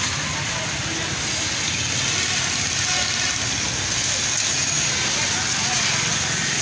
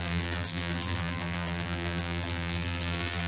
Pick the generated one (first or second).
second